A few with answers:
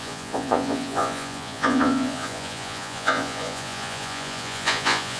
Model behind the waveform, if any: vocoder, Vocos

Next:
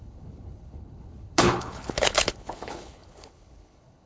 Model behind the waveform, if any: codec, HILCodec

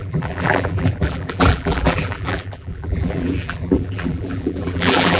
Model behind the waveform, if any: vocoder, BigVGAN v2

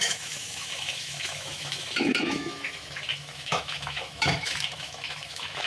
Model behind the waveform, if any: autoencoder, DAC-VAE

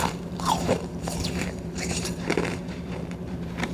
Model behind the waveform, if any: vocoder, BigVGAN v2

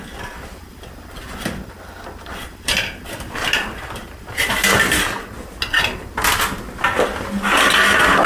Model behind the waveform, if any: none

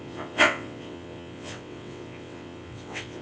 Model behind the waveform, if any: vocoder, WaveNeXt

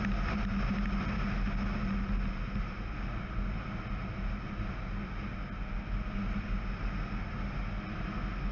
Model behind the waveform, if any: none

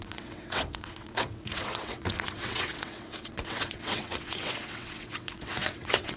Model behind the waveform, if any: vocoder, WaveNeXt